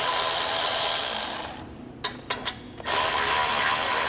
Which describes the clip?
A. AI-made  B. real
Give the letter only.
B